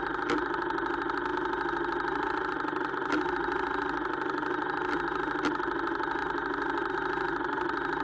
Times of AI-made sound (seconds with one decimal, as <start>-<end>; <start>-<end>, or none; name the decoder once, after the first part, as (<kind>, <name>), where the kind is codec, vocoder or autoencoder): none

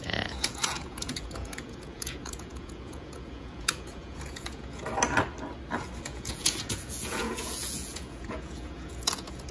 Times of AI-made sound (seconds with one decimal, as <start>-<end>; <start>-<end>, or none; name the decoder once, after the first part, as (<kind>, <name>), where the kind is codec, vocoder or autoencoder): 0.0-4.8 (vocoder, Vocos); 6.0-9.5

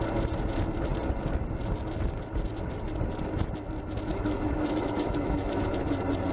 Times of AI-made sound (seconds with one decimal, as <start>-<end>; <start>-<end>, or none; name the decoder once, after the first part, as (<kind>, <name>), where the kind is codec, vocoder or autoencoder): 4.1-5.8 (autoencoder, DAC-VAE)

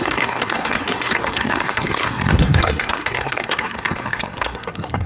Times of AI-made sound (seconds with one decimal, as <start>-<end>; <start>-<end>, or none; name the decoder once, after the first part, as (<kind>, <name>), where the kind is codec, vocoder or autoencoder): 0.0-5.1 (codec, SNAC)

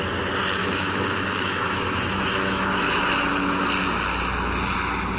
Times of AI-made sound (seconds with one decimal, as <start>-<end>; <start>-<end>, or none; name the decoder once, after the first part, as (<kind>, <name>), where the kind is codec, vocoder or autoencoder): 0.6-3.7 (autoencoder, DAC-VAE)

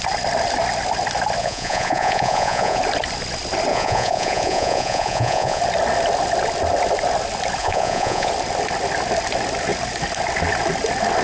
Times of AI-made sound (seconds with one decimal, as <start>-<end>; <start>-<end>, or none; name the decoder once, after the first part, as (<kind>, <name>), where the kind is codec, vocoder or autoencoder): 1.4-2.8 (vocoder, Vocos); 3.7-5.6; 7.6-8.3